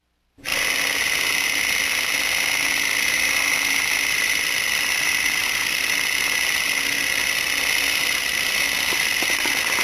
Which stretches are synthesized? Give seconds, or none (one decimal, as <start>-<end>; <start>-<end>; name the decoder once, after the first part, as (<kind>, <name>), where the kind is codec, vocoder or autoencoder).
0.0-0.5 (vocoder, BigVGAN v2); 4.0-5.4; 8.2-9.8